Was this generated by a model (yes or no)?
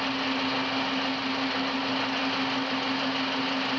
no